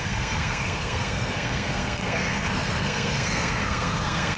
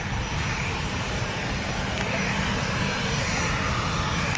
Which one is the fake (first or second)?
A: first